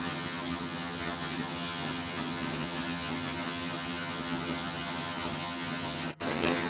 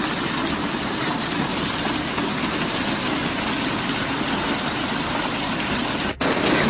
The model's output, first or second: first